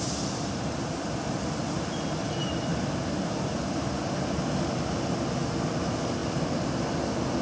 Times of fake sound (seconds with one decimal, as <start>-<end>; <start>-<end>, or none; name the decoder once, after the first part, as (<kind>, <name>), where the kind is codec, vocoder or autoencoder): none